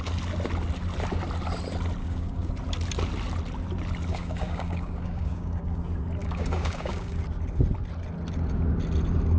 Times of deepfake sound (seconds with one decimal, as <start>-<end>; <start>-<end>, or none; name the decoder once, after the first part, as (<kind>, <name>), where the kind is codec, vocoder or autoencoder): 2.0-2.5 (codec, DAC); 4.1-5.8; 6.2-7.2